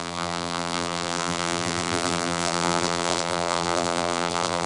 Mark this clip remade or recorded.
remade